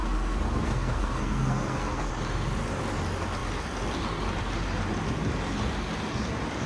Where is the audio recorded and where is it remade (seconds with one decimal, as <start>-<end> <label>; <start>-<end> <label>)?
0.0-2.1 remade; 2.1-6.7 recorded